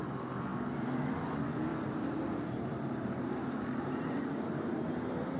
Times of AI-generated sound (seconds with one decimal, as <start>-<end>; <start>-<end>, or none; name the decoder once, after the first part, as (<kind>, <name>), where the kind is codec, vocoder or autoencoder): 1.7-4.9 (vocoder, BigVGAN v2)